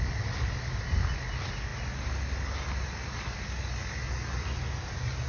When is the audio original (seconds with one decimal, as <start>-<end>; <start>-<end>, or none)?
0.0-5.3